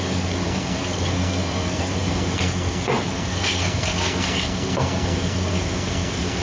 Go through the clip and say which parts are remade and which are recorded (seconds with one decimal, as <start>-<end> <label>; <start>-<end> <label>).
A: 0.0-6.4 remade